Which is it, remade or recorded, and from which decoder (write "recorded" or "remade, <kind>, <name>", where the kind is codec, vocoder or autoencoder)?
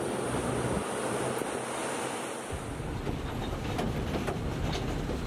recorded